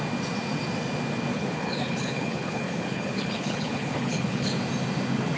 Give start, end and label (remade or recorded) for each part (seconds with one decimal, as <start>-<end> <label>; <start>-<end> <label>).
0.0-1.3 recorded; 1.3-4.5 remade; 4.5-5.4 recorded